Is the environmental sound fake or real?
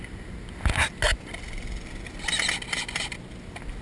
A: real